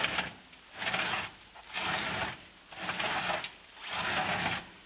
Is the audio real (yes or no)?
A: yes